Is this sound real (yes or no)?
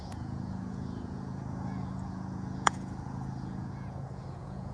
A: no